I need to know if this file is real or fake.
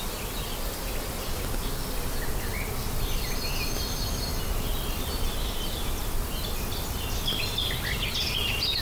real